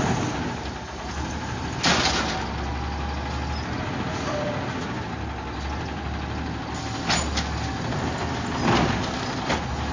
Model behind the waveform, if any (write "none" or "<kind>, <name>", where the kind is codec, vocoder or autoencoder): none